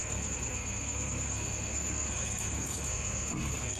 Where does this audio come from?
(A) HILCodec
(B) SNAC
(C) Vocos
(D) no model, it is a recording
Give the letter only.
B